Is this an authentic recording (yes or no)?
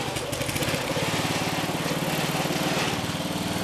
yes